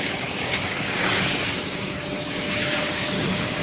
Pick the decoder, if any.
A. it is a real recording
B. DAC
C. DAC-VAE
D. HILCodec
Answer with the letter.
B